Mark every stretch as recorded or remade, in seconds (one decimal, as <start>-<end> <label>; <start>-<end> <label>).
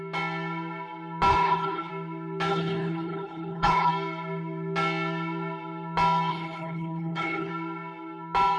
0.0-1.3 recorded; 1.3-1.9 remade; 1.9-2.5 recorded; 2.5-3.9 remade; 3.9-6.3 recorded; 6.3-7.5 remade; 7.5-8.6 recorded